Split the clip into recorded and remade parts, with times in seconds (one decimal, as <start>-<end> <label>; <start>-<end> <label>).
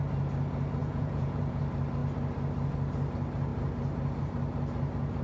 0.0-0.8 recorded; 0.8-1.6 remade; 1.6-5.2 recorded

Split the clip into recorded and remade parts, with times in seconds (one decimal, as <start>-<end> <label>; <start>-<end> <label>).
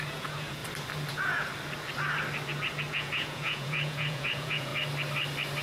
0.0-0.6 remade; 0.6-1.1 recorded; 1.1-1.5 remade; 1.5-2.9 recorded; 2.9-4.7 remade; 4.7-5.6 recorded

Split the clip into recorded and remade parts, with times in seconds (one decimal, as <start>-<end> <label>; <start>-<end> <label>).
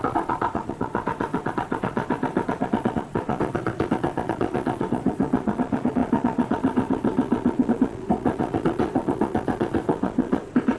0.0-10.8 remade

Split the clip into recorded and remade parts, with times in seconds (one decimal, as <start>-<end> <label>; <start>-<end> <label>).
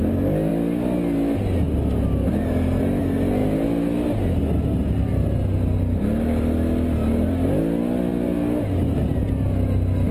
0.0-10.1 recorded